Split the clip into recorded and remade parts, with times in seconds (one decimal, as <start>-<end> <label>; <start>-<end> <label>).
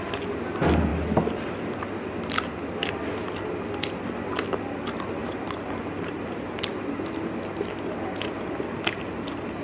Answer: 0.0-5.2 recorded; 5.2-6.6 remade; 6.6-9.6 recorded